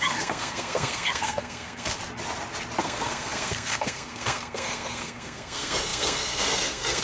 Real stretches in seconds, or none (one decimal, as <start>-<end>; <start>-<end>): 2.0-2.8